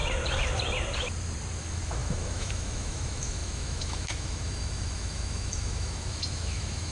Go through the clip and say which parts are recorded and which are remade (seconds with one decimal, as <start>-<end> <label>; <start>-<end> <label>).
0.0-1.6 recorded; 1.6-6.9 remade